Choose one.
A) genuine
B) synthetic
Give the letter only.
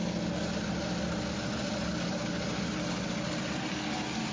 A